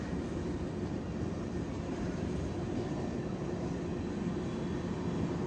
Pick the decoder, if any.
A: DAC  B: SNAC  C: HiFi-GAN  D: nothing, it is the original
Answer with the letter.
D